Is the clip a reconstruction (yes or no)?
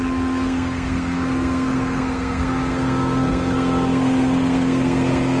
yes